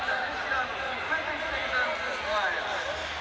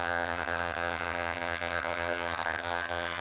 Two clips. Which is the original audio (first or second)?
first